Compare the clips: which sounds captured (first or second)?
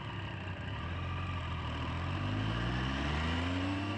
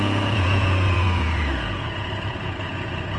first